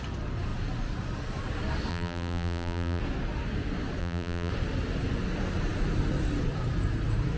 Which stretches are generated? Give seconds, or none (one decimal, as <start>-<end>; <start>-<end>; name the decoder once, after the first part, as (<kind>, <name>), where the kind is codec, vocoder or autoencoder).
1.9-3.0 (vocoder, BigVGAN v2); 4.0-4.5